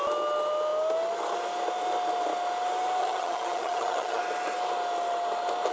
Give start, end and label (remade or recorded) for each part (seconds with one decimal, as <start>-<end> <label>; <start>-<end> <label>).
0.0-3.0 recorded; 3.0-4.2 remade; 4.2-5.7 recorded